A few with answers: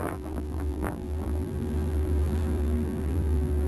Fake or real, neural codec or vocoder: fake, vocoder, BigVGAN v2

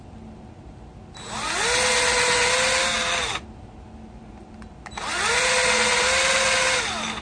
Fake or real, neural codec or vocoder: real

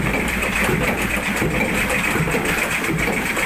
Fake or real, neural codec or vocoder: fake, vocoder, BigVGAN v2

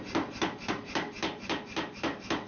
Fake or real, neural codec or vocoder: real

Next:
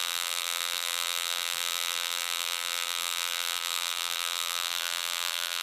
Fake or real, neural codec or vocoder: fake, vocoder, BigVGAN v2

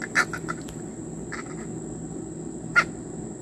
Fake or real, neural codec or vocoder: real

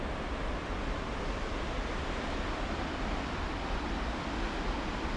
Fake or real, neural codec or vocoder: fake, vocoder, BigVGAN v2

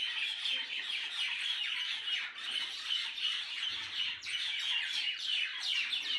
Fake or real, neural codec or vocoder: fake, vocoder, BigVGAN v2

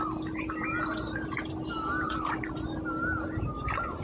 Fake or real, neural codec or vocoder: real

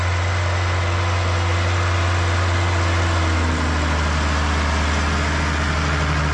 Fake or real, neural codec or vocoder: real